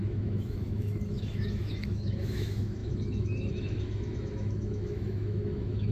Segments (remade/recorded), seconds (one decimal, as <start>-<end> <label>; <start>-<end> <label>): 0.0-5.9 remade